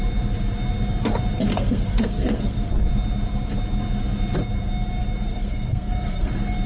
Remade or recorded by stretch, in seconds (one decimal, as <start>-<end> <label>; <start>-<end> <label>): 0.0-1.5 recorded; 1.5-2.7 remade; 2.7-5.3 recorded; 5.3-6.3 remade; 6.3-6.7 recorded